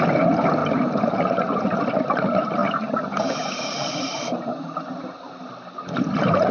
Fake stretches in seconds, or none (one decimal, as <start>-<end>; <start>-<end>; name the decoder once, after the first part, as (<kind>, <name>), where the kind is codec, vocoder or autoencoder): 0.6-1.8 (vocoder, BigVGAN v2); 2.6-4.8